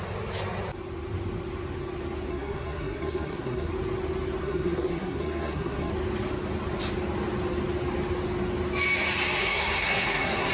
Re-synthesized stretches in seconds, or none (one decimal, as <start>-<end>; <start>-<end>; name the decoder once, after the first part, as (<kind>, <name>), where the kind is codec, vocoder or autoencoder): 2.3-3.7 (codec, SNAC); 4.4-5.9; 9.4-10.5